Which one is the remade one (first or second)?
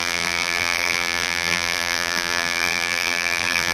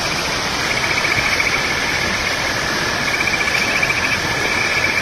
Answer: first